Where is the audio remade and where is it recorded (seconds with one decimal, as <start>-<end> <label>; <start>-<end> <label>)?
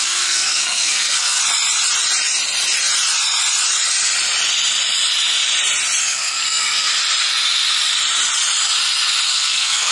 0.0-1.4 remade; 1.4-6.0 recorded; 6.0-6.9 remade; 6.9-9.3 recorded; 9.3-9.9 remade